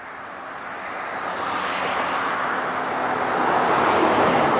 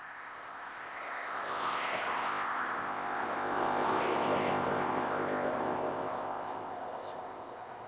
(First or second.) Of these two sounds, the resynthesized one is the second